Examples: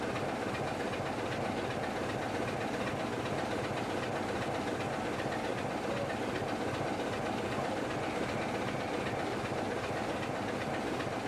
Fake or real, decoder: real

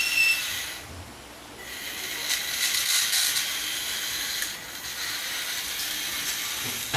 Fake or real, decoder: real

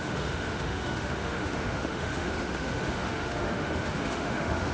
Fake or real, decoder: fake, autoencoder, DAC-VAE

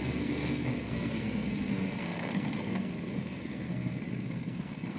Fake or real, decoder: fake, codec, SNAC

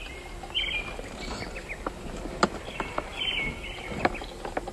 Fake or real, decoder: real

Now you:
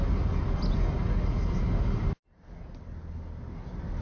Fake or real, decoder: real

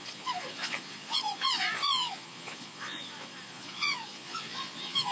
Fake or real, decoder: fake, vocoder, Vocos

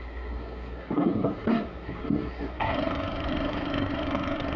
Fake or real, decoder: fake, codec, SNAC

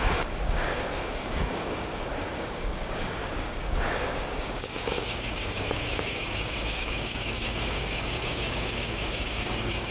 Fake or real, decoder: fake, codec, DAC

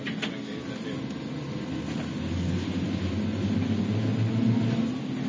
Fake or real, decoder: real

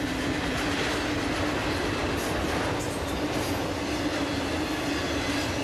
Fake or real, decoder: real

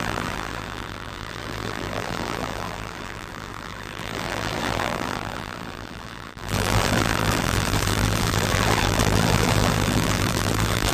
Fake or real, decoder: fake, vocoder, BigVGAN v2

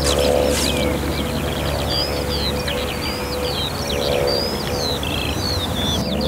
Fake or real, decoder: real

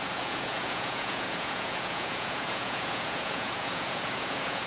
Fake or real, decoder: fake, vocoder, Vocos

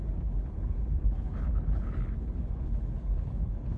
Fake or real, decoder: fake, codec, HILCodec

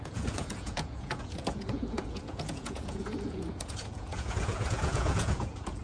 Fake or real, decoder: fake, vocoder, Vocos